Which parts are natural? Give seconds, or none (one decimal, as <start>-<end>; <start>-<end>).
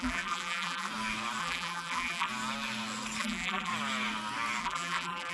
0.9-1.4; 2.3-3.2; 3.7-4.6